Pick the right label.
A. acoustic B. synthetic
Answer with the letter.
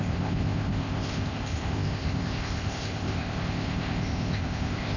B